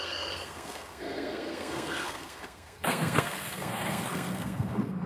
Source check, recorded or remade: remade